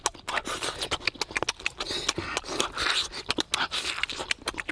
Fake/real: real